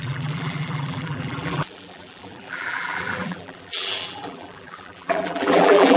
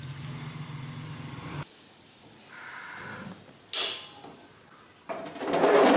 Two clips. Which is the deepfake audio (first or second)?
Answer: first